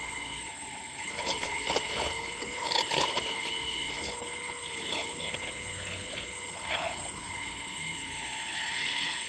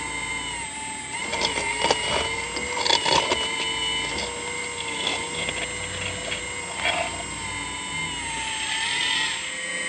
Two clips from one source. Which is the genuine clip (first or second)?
second